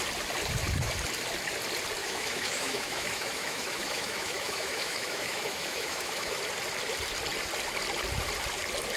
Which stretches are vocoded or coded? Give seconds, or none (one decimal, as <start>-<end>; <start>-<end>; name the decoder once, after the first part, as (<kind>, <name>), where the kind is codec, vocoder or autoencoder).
2.0-6.4 (autoencoder, DAC-VAE)